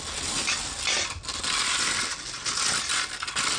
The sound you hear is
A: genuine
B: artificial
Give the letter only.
A